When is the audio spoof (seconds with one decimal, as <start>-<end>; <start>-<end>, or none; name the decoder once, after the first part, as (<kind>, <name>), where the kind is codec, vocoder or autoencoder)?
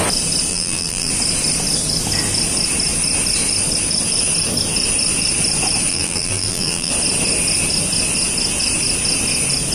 0.5-1.1 (vocoder, BigVGAN v2); 5.9-6.9